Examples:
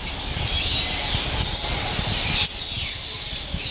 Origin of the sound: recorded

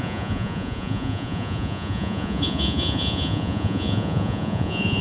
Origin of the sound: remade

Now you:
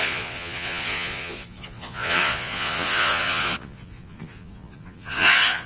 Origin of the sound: remade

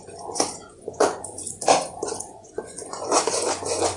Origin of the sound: remade